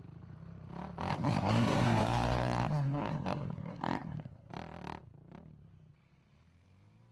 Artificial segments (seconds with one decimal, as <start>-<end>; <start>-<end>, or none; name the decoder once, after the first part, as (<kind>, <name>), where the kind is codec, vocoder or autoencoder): 1.1-4.5 (codec, SNAC)